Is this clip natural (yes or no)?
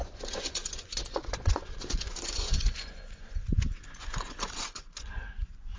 no